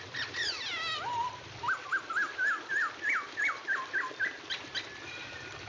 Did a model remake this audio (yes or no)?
no